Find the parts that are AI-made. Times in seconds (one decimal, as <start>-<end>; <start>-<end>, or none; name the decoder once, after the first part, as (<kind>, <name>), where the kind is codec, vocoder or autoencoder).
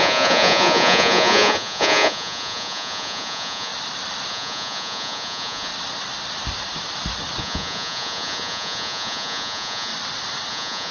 0.0-3.7 (vocoder, Vocos); 4.3-5.7; 7.4-9.9; 10.5-10.9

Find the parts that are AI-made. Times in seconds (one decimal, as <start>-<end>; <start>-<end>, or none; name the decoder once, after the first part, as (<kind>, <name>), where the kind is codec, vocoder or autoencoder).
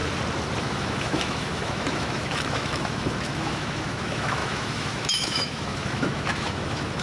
0.6-7.0 (autoencoder, DAC-VAE)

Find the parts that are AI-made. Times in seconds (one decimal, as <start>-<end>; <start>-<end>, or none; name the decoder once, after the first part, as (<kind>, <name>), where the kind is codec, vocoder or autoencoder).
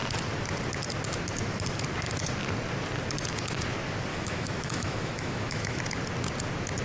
4.1-5.8 (autoencoder, DAC-VAE)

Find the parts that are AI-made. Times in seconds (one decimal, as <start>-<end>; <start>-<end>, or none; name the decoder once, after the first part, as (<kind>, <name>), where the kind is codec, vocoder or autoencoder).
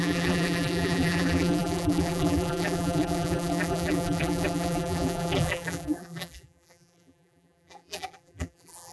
0.0-8.9 (vocoder, BigVGAN v2)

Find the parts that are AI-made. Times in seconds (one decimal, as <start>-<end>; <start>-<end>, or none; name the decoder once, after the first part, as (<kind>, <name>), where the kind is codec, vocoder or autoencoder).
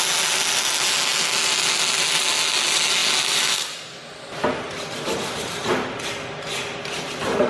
none